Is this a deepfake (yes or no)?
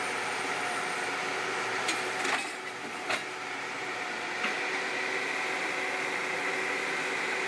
no